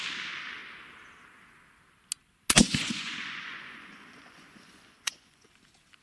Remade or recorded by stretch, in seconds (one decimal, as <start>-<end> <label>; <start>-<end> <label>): 0.0-2.6 recorded; 2.6-5.5 remade; 5.5-6.0 recorded